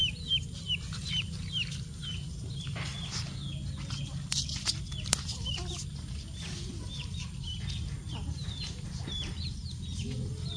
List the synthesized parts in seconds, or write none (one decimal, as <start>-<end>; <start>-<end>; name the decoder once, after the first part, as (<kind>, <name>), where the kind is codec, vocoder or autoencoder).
none